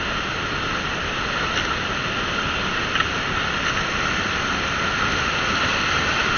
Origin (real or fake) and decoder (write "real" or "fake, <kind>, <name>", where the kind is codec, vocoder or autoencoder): real